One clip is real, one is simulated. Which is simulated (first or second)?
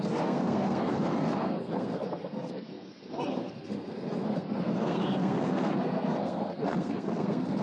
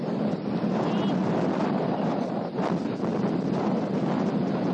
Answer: first